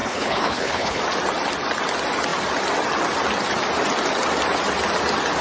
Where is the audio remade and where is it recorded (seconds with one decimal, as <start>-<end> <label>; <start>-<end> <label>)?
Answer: 0.0-1.0 remade; 1.0-5.4 recorded

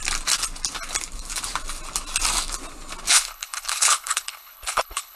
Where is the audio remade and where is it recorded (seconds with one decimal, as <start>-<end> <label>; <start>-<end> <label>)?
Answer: 0.0-3.1 recorded; 3.1-5.2 remade

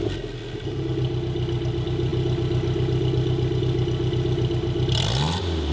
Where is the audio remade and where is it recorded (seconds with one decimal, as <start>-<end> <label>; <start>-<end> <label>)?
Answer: 0.0-5.7 recorded

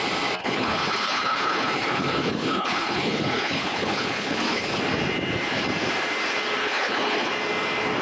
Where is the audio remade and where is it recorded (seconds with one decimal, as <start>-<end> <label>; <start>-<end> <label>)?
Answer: 0.0-0.4 recorded; 0.4-4.8 remade; 4.8-6.6 recorded; 6.6-7.3 remade; 7.3-8.0 recorded